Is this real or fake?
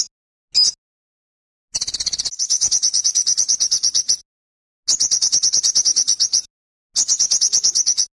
real